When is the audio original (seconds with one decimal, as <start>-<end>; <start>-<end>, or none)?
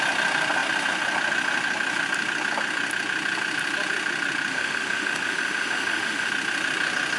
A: 0.0-4.5; 6.3-7.2